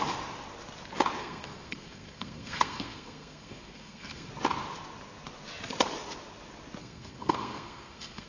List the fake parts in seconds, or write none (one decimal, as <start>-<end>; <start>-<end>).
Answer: 1.2-4.3; 6.8-8.3

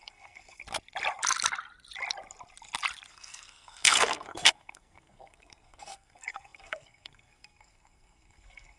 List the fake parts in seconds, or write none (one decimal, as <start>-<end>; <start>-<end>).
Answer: 0.0-0.6; 3.1-8.8

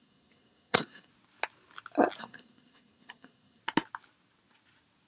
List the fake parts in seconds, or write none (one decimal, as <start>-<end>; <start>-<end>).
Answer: 0.0-1.1; 2.2-3.6

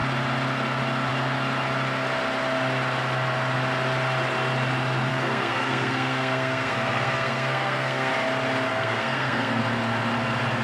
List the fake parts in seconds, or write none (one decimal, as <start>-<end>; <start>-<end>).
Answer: 5.1-8.1; 8.7-9.6

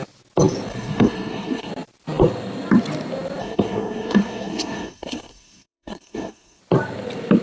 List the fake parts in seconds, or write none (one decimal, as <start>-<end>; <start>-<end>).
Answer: 0.7-1.7; 3.4-6.6

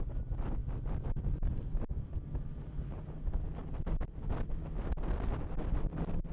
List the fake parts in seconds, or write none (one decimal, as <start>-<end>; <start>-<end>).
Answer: none

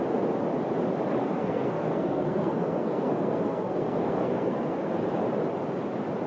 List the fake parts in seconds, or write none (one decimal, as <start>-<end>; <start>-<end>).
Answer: 1.2-4.9